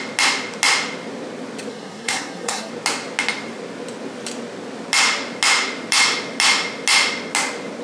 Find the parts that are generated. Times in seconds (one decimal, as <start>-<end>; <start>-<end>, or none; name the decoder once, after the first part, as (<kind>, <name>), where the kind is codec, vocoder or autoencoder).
1.7-2.7 (codec, SNAC)